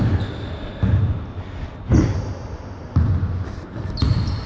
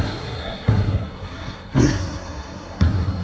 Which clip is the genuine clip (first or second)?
first